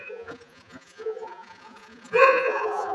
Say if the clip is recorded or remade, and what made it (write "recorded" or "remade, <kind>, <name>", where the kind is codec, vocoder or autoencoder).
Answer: remade, vocoder, Vocos